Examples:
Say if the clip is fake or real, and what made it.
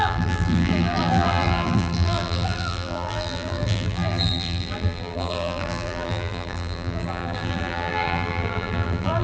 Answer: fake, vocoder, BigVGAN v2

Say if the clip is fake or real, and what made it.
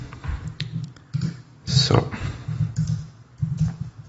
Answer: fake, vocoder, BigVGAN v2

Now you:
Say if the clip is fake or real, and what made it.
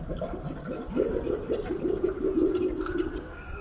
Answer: real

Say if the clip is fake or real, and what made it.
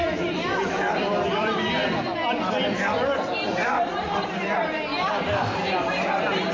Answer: fake, vocoder, BigVGAN v2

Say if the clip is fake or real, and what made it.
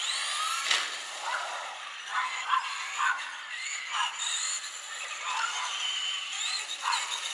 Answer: real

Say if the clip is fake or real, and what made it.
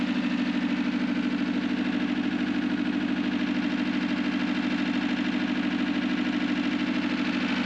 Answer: real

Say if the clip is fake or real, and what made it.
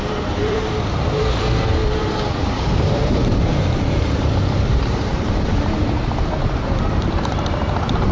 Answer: fake, vocoder, BigVGAN v2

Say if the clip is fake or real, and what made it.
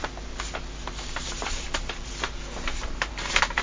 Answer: fake, vocoder, BigVGAN v2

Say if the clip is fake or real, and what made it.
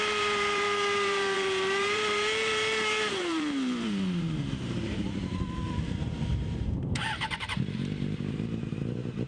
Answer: fake, vocoder, BigVGAN v2